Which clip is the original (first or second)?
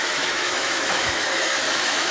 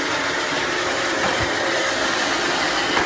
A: second